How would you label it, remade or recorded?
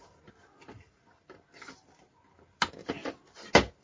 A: recorded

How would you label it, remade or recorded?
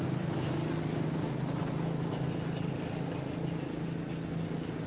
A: recorded